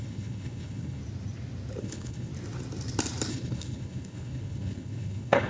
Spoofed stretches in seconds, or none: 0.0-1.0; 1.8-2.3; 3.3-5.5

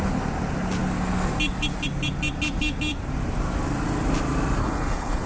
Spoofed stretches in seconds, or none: 4.6-5.3

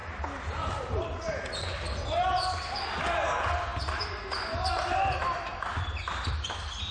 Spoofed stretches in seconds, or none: none

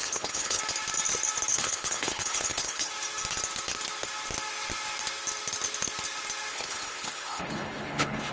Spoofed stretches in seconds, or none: 0.0-0.6; 1.5-2.9; 6.5-8.3

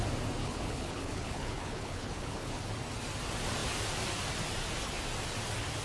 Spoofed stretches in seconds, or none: 0.4-2.6